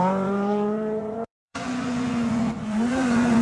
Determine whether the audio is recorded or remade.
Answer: remade